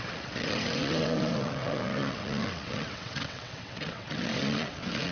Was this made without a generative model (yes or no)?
no